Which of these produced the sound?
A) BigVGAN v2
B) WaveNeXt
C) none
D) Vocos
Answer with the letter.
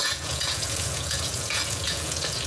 D